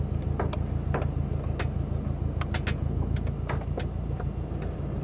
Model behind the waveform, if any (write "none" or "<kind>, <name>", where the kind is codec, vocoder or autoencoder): none